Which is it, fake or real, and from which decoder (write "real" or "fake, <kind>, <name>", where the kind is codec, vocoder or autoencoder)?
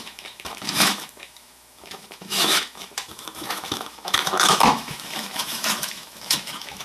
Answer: fake, autoencoder, DAC-VAE